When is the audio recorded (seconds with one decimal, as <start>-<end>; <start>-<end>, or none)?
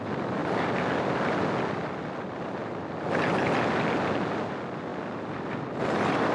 0.0-6.3